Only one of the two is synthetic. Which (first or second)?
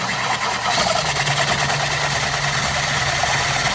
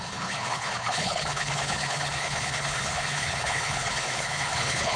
second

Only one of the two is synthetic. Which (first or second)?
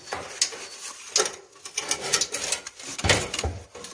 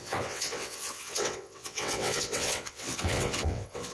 second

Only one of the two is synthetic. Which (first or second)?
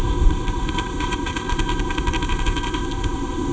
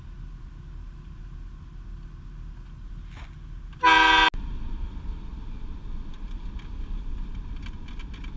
first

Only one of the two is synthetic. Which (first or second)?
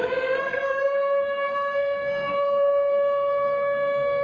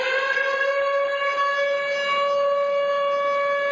first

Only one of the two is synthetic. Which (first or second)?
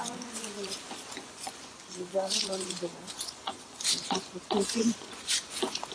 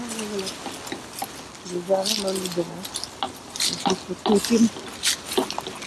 first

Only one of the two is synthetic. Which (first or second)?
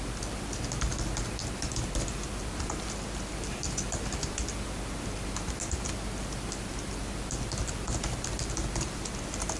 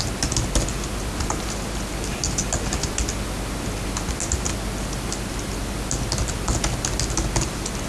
first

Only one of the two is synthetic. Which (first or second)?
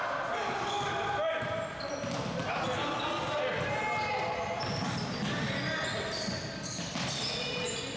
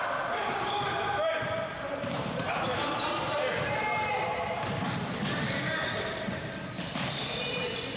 second